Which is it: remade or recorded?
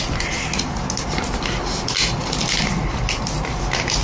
recorded